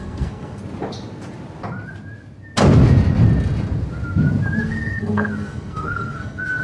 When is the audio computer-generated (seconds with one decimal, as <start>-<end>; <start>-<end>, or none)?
0.0-0.6; 4.6-6.6